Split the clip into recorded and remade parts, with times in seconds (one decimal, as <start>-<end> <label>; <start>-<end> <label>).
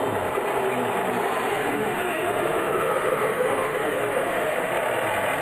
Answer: 0.0-1.5 recorded; 1.5-4.7 remade; 4.7-5.4 recorded